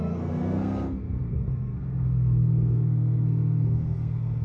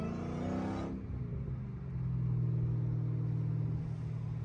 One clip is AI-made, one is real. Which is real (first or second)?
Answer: second